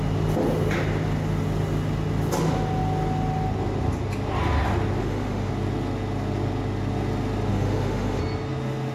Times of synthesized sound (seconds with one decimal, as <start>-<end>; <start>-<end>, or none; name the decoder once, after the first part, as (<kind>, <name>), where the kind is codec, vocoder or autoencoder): 5.0-5.5 (autoencoder, DAC-VAE); 7.5-8.2